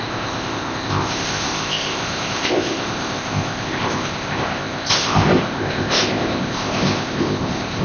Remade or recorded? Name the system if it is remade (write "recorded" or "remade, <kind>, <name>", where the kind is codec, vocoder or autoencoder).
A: remade, codec, ZipCodec